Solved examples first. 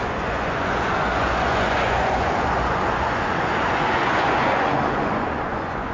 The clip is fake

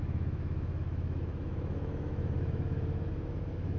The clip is fake